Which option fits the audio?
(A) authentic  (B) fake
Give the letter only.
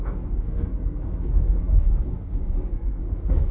B